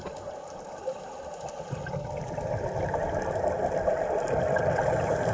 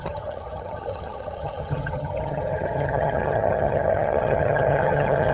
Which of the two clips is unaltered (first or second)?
first